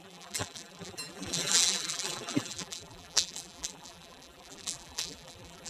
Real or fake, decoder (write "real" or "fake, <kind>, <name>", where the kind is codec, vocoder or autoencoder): fake, vocoder, BigVGAN v2